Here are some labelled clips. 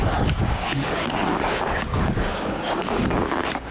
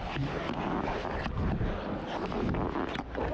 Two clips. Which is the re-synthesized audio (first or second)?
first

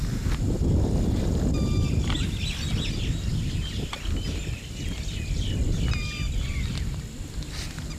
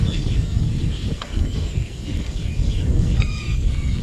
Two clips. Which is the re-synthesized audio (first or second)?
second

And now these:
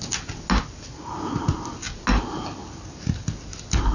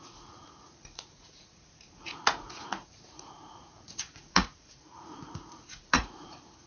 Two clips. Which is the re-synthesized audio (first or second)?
second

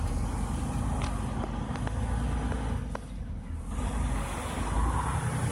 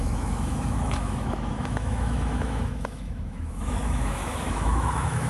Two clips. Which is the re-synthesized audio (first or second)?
second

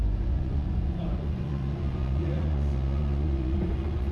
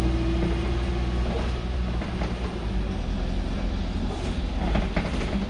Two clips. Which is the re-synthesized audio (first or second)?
first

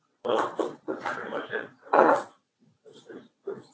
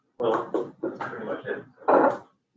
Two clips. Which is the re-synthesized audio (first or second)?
first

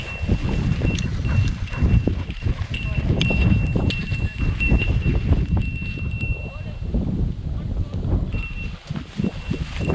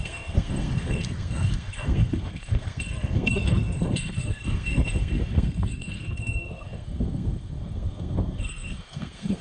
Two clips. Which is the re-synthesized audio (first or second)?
second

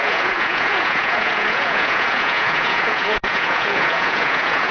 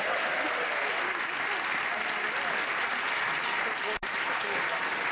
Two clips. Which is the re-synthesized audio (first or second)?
first